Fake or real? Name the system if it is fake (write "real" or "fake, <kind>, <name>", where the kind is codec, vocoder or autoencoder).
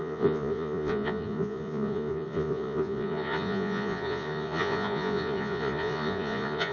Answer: fake, vocoder, Vocos